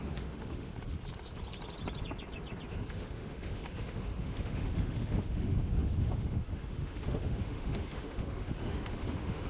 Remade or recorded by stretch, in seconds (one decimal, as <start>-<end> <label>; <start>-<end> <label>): 0.0-0.7 remade; 0.7-2.7 recorded; 2.7-9.5 remade